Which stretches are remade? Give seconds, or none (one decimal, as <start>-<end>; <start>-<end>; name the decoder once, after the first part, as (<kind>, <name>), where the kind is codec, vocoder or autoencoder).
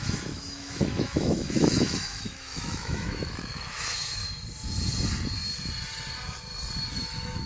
0.0-4.2 (autoencoder, DAC-VAE); 6.9-7.5